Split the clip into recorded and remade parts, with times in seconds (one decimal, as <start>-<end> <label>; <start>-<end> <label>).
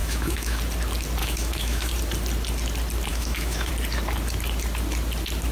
0.0-0.6 remade; 0.6-1.2 recorded; 1.2-1.9 remade; 1.9-3.1 recorded; 3.1-3.7 remade; 3.7-5.5 recorded